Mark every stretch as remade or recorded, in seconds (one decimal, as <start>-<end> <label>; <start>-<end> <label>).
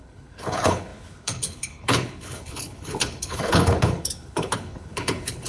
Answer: 0.0-5.5 remade